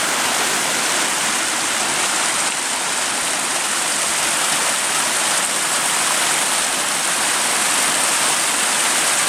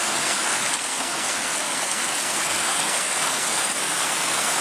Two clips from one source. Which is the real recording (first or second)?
first